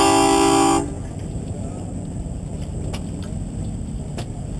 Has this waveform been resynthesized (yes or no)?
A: no